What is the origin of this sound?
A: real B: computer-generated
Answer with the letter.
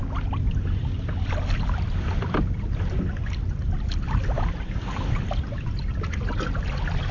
A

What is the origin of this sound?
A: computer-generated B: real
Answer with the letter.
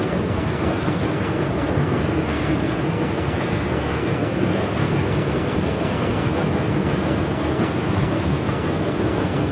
A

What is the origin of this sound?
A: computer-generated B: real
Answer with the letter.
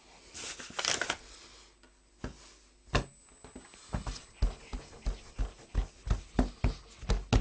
B